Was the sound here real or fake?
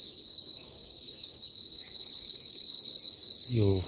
fake